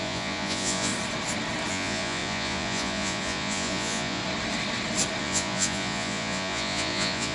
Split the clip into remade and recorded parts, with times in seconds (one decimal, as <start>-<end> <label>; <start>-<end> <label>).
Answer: 0.0-0.9 remade; 0.9-1.7 recorded; 1.7-4.2 remade; 4.2-5.2 recorded; 5.2-7.3 remade